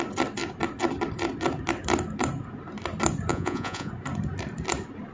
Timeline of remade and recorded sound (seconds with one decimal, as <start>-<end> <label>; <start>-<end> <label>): 0.0-3.3 recorded; 3.3-3.9 remade; 3.9-5.1 recorded